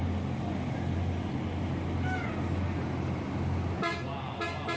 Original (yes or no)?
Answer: yes